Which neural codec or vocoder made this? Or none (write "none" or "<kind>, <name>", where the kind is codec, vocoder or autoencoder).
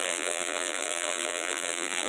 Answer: vocoder, BigVGAN v2